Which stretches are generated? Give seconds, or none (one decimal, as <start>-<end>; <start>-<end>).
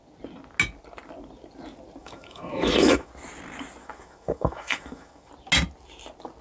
2.0-3.1; 3.8-5.3